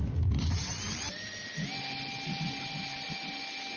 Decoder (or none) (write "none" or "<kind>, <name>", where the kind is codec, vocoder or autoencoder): none